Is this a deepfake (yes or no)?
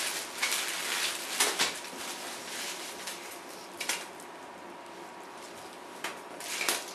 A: no